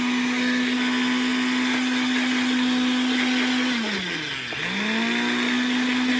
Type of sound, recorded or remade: recorded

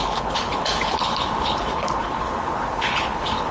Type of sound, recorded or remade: remade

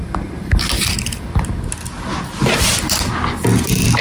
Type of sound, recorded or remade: recorded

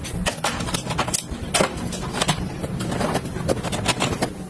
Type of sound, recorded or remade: recorded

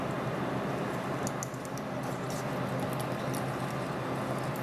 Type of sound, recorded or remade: recorded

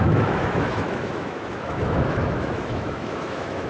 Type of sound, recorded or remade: remade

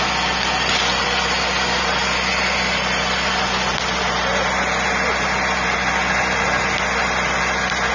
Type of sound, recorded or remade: recorded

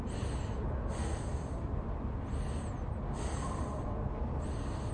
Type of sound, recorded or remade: recorded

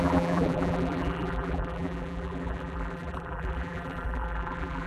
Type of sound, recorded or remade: remade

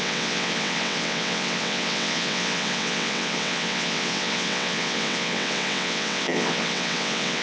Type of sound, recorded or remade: remade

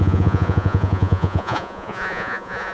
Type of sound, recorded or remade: remade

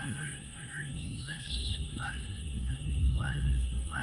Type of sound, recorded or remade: remade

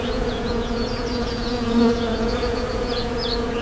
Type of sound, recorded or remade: remade